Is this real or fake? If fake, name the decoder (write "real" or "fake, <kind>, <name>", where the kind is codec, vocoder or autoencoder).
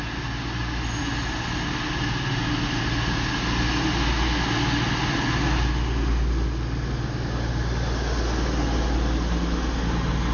real